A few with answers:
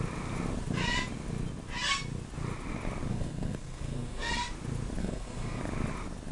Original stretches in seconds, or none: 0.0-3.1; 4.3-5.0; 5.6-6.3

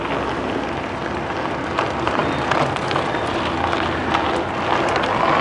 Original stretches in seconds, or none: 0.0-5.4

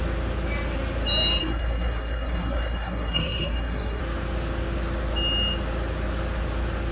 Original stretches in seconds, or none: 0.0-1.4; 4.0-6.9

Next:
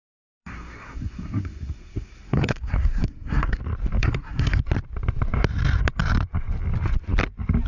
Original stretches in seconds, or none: 3.6-4.0; 4.6-7.7

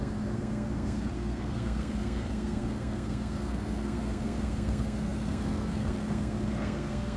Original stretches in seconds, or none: none

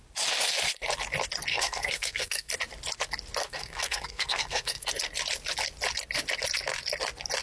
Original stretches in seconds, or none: 0.0-1.5; 2.5-3.4; 4.9-7.4

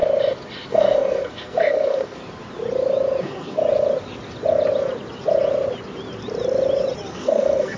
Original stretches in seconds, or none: 0.0-0.7; 2.2-3.2; 3.6-7.1

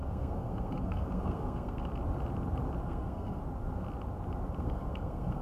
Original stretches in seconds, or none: 1.9-2.8; 3.4-4.6